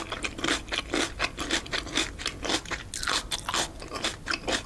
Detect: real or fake real